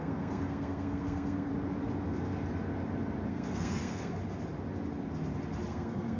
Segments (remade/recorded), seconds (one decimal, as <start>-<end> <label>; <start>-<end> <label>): 0.0-1.5 remade; 1.5-3.3 recorded; 3.3-4.2 remade; 4.2-5.7 recorded; 5.7-6.2 remade